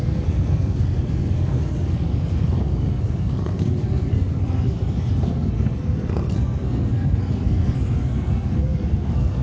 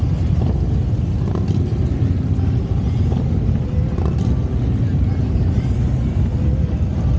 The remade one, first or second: first